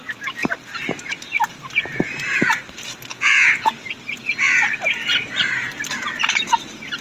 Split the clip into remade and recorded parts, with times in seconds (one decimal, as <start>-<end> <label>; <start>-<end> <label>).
0.0-3.1 recorded; 3.1-3.7 remade; 3.7-7.0 recorded